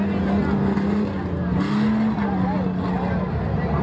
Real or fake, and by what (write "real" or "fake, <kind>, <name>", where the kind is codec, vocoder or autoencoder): real